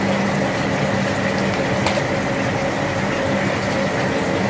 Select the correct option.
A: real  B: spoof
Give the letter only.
A